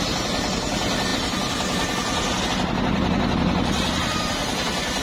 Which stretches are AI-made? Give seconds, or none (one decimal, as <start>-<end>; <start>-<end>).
none